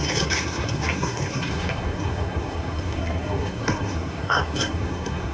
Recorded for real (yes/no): no